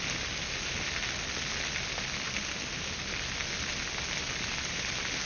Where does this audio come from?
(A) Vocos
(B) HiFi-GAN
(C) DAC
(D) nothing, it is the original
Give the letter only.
D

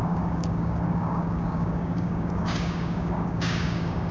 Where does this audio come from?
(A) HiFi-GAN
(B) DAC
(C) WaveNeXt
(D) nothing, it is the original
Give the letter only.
B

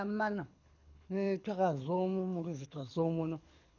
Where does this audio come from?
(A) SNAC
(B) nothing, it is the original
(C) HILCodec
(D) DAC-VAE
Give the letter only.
C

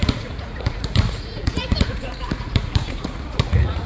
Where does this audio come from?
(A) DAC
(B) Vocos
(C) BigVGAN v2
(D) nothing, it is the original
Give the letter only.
B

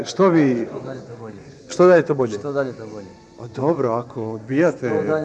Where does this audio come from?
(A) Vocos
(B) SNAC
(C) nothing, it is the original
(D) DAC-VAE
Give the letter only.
A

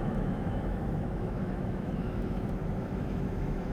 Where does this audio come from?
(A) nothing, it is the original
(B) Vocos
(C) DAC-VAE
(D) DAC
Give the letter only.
C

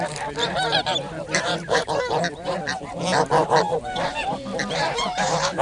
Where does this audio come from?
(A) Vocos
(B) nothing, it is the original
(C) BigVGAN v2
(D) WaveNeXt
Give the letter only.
C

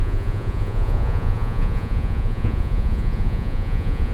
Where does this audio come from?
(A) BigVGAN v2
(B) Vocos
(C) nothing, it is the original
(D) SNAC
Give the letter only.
B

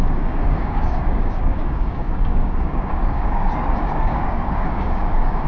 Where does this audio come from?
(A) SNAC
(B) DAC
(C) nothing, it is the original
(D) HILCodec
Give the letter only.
B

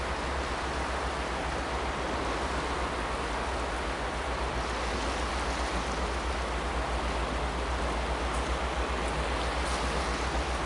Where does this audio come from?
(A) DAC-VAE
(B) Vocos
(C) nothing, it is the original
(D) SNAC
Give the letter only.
C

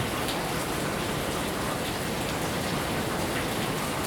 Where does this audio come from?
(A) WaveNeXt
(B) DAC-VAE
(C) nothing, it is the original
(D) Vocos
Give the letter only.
C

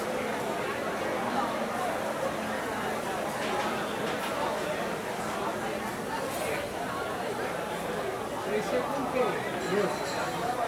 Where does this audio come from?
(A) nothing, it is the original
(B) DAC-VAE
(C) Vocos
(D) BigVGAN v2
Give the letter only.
A